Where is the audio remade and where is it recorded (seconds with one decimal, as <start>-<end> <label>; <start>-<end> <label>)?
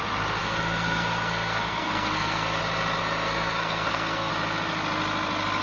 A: 0.0-0.4 recorded; 0.4-2.6 remade; 2.6-3.0 recorded; 3.0-4.3 remade; 4.3-5.6 recorded